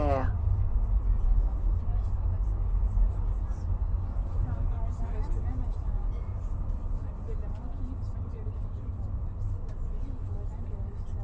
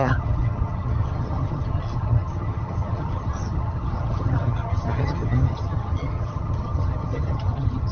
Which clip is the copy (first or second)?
second